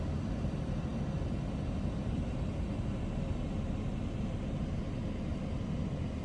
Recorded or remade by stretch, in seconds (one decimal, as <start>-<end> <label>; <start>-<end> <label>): 0.0-6.2 recorded